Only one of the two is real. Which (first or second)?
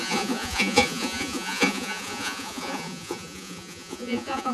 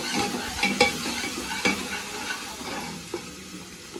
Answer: second